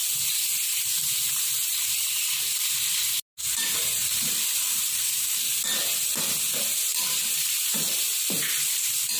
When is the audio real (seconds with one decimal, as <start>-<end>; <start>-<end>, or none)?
1.5-4.0; 5.6-9.2